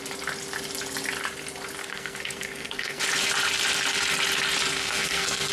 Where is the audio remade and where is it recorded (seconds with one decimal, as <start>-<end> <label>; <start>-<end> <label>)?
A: 0.0-1.8 recorded; 1.8-3.0 remade; 3.0-4.7 recorded; 4.7-5.5 remade